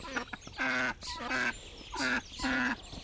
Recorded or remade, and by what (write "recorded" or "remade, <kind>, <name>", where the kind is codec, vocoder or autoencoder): recorded